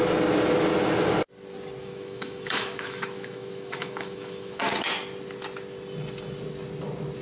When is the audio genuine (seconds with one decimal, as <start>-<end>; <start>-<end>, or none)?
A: 0.0-1.8; 4.6-7.2